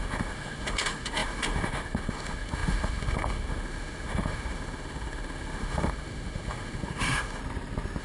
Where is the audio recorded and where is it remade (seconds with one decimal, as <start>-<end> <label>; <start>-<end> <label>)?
0.0-7.4 remade; 7.4-8.0 recorded